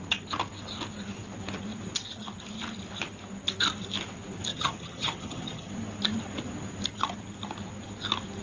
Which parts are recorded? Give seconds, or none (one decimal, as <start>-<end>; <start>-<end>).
0.0-4.5; 5.7-8.4